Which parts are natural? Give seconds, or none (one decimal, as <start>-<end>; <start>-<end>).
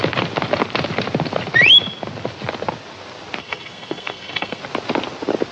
0.0-3.4; 4.6-5.5